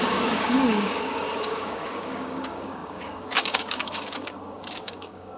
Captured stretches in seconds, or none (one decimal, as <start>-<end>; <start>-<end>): none